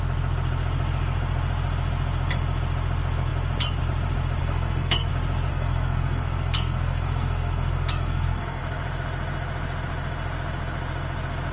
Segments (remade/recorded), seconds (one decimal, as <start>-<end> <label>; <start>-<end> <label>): 0.0-4.4 recorded; 4.4-5.1 remade; 5.1-5.5 recorded; 5.5-8.6 remade; 8.6-11.5 recorded